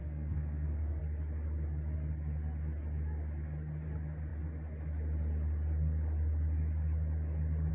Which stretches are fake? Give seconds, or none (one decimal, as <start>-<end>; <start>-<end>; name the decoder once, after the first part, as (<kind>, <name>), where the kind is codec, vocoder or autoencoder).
0.0-1.0 (codec, SNAC)